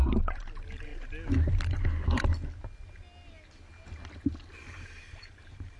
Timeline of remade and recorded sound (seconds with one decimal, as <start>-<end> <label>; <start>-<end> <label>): 0.0-0.9 remade; 0.9-4.4 recorded; 4.4-5.8 remade